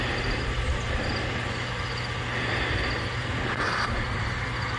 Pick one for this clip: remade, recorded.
recorded